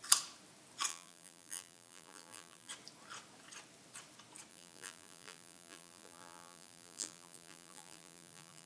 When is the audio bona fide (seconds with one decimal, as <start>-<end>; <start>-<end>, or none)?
0.0-0.9; 2.7-4.5